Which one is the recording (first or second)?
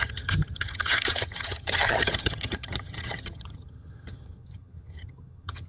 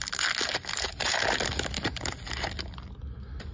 second